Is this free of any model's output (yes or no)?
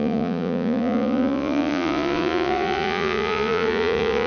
no